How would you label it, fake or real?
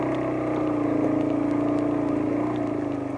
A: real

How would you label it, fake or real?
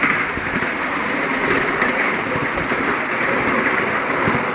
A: real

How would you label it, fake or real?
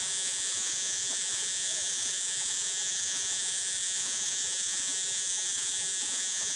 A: fake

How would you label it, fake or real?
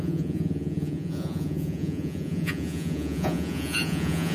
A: fake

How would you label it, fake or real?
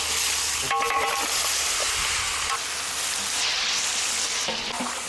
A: real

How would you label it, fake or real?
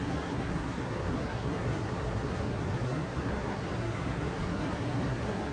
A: fake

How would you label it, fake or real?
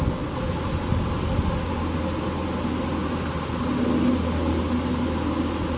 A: real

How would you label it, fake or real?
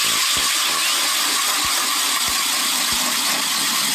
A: real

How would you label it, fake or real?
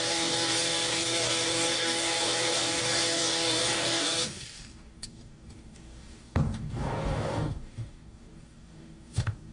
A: fake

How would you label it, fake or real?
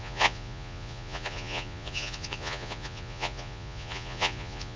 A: fake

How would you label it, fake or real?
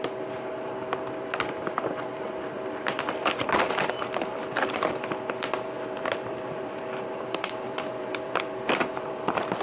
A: fake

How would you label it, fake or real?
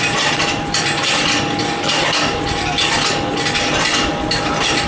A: real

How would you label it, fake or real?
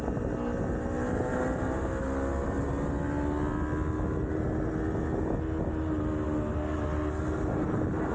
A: real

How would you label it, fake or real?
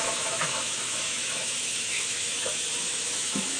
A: fake